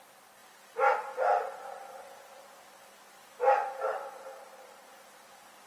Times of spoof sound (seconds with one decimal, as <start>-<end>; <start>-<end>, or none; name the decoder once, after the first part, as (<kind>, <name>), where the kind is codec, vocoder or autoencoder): none